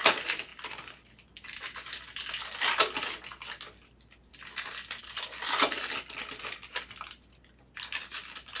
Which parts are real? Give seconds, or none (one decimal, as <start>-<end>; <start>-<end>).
0.0-8.6